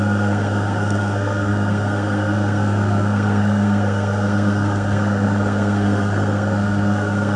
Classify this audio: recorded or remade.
remade